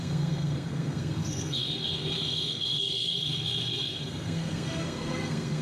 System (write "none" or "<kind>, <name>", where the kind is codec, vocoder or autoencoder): codec, SNAC